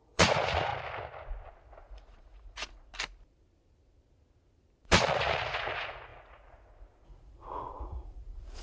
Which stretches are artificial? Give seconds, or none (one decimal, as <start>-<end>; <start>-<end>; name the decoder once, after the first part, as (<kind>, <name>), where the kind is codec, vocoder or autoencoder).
0.0-0.7 (vocoder, Vocos); 1.7-2.9; 4.8-8.6